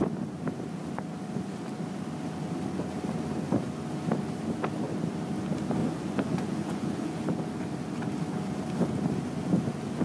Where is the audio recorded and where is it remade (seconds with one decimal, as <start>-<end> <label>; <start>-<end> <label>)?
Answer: 0.0-5.8 recorded; 5.8-7.2 remade; 7.2-10.0 recorded